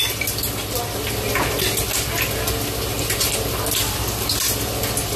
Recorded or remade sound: recorded